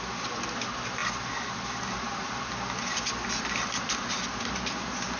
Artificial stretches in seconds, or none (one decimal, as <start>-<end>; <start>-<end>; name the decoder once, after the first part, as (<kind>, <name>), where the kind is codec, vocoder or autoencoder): 1.0-4.1 (vocoder, BigVGAN v2)